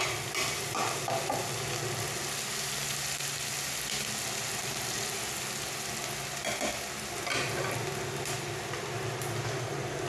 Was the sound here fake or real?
real